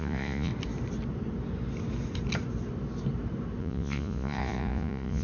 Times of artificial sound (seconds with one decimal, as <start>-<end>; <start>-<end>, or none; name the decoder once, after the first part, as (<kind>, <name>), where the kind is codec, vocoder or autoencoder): 0.0-0.5 (vocoder, Vocos); 3.6-5.2